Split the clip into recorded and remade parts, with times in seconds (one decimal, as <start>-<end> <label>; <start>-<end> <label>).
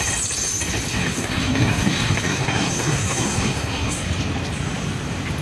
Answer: 0.0-0.9 recorded; 0.9-4.1 remade; 4.1-5.4 recorded